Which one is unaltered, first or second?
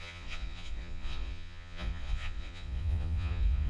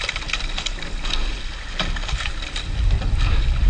second